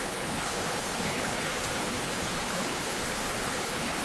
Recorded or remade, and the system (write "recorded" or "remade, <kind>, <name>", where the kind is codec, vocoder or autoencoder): remade, codec, HILCodec